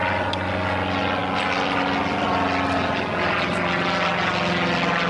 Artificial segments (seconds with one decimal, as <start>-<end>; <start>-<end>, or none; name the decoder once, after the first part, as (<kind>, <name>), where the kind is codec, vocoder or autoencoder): none